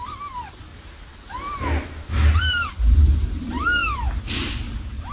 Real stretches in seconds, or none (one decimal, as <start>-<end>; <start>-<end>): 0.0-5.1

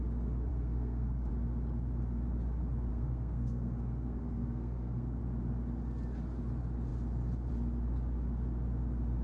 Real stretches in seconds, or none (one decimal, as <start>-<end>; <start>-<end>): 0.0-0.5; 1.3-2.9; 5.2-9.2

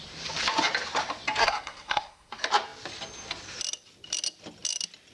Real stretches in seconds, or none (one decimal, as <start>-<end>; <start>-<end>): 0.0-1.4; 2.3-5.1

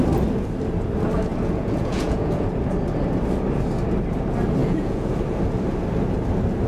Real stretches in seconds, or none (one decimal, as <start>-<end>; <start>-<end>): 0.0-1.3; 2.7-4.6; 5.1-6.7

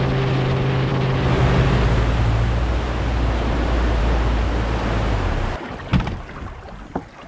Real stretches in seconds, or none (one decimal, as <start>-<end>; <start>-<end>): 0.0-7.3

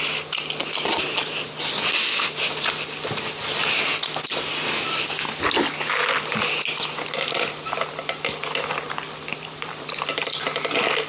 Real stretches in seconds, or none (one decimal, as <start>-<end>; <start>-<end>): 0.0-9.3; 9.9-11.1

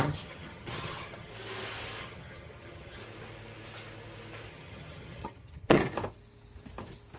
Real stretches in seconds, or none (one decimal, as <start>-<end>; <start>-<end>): 1.3-2.0; 3.0-4.5; 5.8-7.2